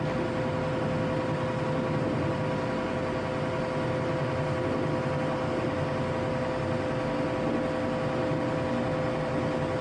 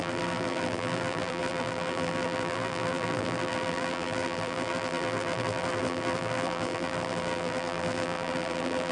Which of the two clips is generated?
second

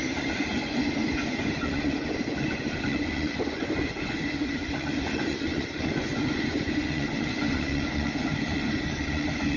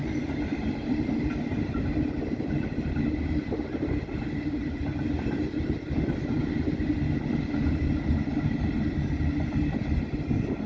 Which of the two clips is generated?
first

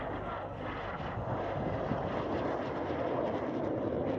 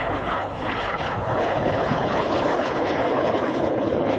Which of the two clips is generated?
second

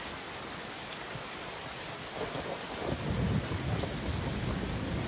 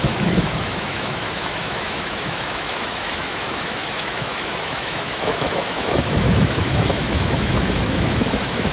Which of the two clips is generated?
second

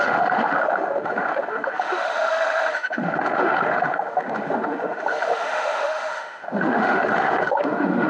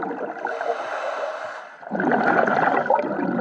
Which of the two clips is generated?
first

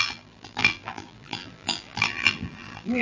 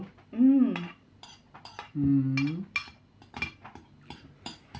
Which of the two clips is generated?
first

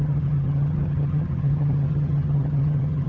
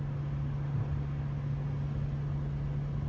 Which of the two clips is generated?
first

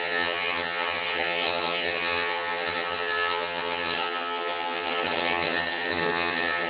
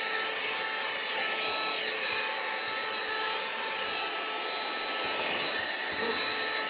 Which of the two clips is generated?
first